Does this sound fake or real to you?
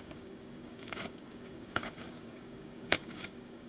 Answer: fake